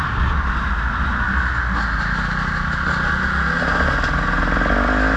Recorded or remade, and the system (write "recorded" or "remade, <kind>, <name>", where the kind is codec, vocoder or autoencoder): recorded